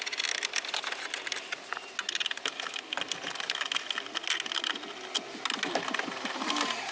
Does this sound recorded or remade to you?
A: recorded